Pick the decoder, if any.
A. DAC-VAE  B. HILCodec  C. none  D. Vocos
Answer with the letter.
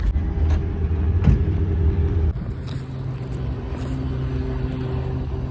C